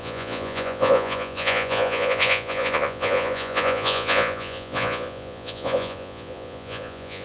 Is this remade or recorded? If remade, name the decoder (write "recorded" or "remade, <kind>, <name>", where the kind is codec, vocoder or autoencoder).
remade, vocoder, Vocos